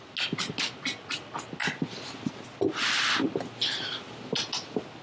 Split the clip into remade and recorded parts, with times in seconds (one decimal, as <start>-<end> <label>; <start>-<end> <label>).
0.0-5.0 recorded